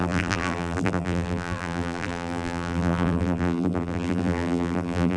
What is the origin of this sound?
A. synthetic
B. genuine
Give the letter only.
A